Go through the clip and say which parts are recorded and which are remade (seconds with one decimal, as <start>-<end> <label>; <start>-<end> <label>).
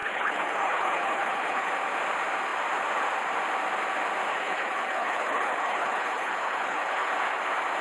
0.0-1.7 remade; 1.7-4.3 recorded; 4.3-7.1 remade; 7.1-7.8 recorded